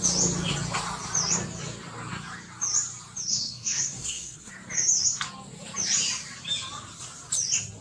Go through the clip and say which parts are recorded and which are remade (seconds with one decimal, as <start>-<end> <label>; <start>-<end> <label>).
0.0-3.3 recorded; 3.3-4.5 remade; 4.5-7.8 recorded